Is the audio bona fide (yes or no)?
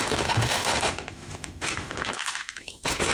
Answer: no